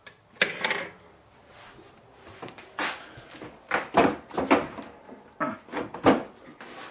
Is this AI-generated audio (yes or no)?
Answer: no